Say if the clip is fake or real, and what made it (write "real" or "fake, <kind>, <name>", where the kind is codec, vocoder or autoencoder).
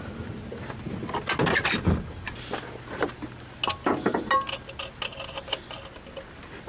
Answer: real